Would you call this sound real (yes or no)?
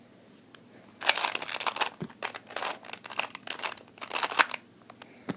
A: yes